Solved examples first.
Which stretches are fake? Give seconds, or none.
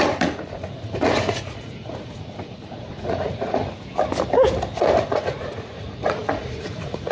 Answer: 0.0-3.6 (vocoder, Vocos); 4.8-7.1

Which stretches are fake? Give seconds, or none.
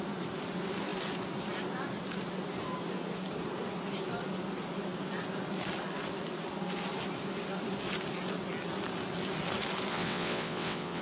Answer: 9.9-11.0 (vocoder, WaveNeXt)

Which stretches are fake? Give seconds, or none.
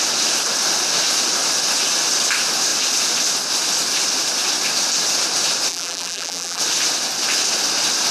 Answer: 5.7-6.6 (vocoder, BigVGAN v2)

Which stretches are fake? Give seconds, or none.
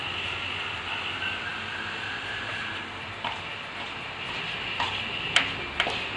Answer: none